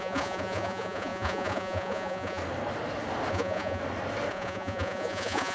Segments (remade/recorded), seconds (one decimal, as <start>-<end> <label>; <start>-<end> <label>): 0.0-2.4 remade; 2.4-3.3 recorded; 3.3-3.8 remade; 3.8-4.3 recorded; 4.3-5.5 remade